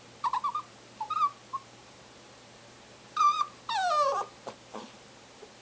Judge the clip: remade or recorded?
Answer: remade